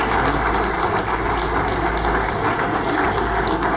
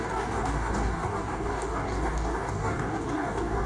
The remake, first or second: second